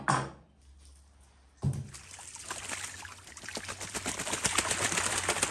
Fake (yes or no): no